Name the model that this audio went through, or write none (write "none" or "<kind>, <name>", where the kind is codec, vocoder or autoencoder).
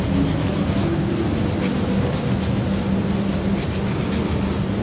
none